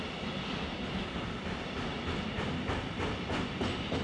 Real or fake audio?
real